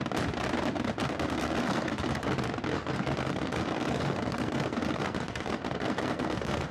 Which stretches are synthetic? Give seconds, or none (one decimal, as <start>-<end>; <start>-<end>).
1.0-2.3; 2.7-6.7